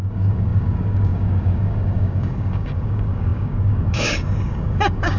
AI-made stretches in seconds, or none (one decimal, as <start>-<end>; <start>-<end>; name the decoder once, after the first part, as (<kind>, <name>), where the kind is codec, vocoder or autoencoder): 0.0-5.2 (codec, DAC)